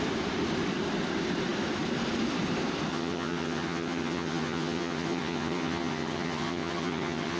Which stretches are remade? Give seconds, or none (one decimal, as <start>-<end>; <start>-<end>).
2.9-7.4

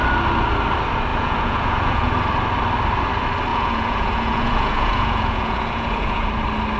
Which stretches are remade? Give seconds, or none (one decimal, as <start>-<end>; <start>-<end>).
1.1-2.1; 3.5-6.3

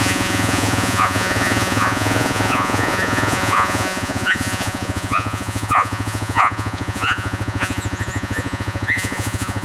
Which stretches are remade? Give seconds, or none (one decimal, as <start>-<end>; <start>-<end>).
0.0-9.6

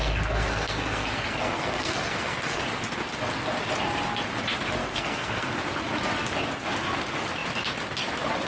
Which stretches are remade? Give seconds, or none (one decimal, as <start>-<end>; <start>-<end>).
0.0-2.6; 4.8-5.6